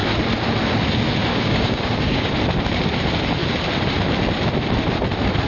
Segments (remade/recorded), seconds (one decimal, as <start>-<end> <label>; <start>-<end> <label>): 0.0-1.3 recorded; 1.3-2.4 remade; 2.4-5.5 recorded